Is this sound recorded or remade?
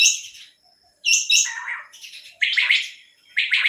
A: recorded